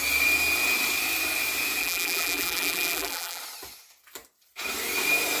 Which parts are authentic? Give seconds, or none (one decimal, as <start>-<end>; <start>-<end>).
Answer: 0.0-1.8; 3.4-5.4